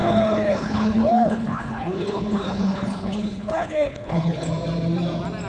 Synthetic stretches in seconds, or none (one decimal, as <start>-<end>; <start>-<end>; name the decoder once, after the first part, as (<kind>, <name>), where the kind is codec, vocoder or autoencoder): 0.0-4.5 (codec, HILCodec)